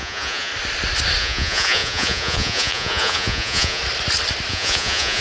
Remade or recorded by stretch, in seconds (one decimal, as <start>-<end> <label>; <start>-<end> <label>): 0.0-0.5 remade; 0.5-1.2 recorded; 1.2-3.8 remade; 3.8-4.5 recorded; 4.5-5.2 remade